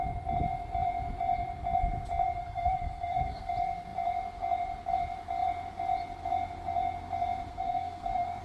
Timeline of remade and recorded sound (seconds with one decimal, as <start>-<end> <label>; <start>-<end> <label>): 0.0-2.4 recorded; 2.4-3.5 remade; 3.5-7.5 recorded; 7.5-8.4 remade